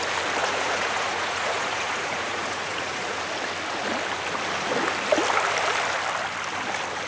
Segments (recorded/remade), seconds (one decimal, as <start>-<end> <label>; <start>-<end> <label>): 0.0-0.4 recorded; 0.4-3.2 remade; 3.2-7.1 recorded